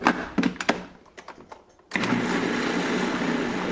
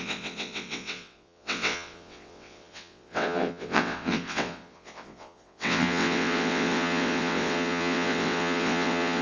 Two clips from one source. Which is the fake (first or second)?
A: second